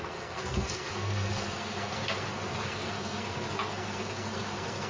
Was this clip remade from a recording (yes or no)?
yes